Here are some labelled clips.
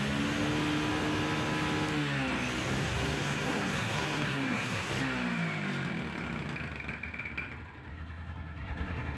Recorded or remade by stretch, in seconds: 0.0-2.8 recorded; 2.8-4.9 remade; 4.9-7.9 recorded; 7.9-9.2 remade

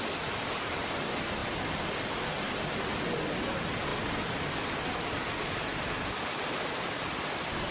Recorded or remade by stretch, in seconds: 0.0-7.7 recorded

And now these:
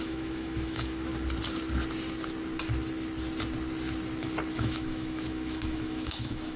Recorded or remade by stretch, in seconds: 0.0-1.1 remade; 1.1-4.5 recorded; 4.5-6.6 remade

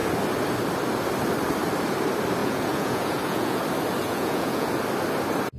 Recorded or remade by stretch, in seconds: 0.0-2.4 recorded; 2.4-3.6 remade; 3.6-4.0 recorded; 4.0-4.7 remade; 4.7-5.6 recorded

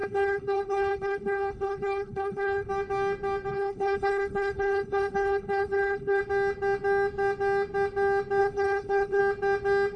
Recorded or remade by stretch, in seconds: 0.0-2.7 remade; 2.7-3.5 recorded; 3.5-6.2 remade; 6.2-8.4 recorded; 8.4-9.2 remade; 9.2-10.0 recorded

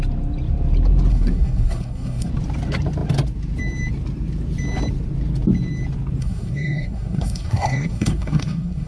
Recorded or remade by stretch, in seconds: 0.0-1.1 recorded; 1.1-2.3 remade; 2.3-6.2 recorded; 6.2-8.9 remade

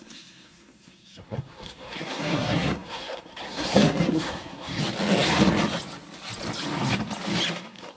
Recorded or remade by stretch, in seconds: 0.0-4.8 remade; 4.8-7.5 recorded; 7.5-8.0 remade